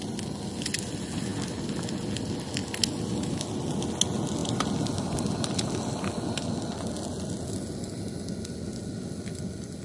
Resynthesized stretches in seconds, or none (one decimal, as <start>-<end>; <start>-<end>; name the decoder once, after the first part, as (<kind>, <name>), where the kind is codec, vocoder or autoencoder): none